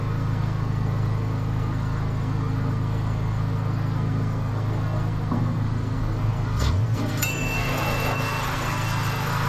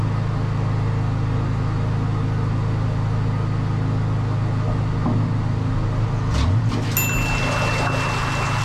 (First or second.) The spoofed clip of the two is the first